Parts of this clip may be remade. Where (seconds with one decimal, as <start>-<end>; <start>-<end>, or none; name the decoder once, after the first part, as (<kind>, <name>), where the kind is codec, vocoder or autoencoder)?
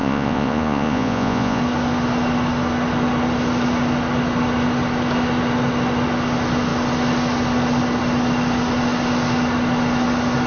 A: 0.0-1.6 (vocoder, Vocos)